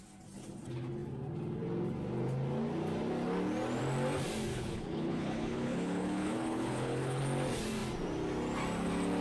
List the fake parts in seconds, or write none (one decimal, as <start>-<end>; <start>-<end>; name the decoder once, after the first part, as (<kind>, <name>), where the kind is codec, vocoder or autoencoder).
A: 4.5-7.2 (codec, HILCodec)

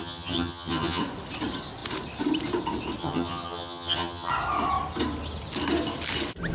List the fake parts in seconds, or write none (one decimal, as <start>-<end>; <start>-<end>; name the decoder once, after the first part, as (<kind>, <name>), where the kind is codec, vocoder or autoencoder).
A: 0.0-1.0 (vocoder, HiFi-GAN); 3.0-4.3

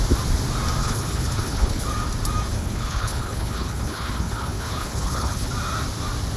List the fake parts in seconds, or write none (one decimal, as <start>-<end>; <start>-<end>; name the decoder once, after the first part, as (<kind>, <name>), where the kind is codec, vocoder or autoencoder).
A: 0.8-1.8 (codec, HILCodec); 2.5-5.5

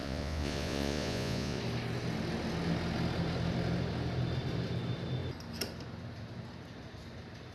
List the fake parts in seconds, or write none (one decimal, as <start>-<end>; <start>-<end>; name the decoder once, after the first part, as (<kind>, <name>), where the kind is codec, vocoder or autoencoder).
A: 0.0-1.6 (vocoder, Vocos)

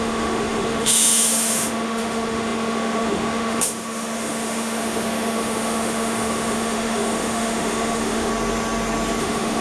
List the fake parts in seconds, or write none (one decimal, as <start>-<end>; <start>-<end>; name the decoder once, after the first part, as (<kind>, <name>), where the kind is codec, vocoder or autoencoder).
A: 0.0-8.3 (autoencoder, DAC-VAE); 9.2-9.6

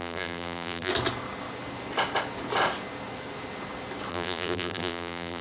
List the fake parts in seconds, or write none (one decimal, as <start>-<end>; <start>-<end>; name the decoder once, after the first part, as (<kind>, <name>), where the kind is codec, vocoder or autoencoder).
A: 0.0-0.9 (vocoder, BigVGAN v2); 4.1-5.4

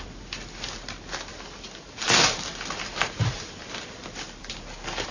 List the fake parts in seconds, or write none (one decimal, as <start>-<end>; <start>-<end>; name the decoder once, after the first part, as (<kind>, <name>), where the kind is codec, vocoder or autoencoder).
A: none

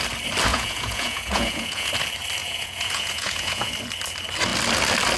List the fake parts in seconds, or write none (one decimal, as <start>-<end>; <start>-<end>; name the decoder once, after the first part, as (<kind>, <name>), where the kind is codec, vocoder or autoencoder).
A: 0.5-1.9 (vocoder, Vocos); 2.4-3.7